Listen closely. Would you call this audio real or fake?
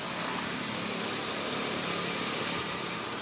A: real